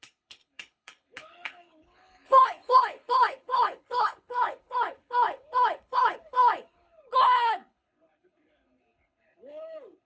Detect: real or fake fake